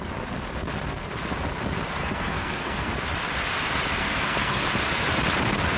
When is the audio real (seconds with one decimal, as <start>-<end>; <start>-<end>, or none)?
0.0-2.0; 2.9-4.0; 4.6-5.8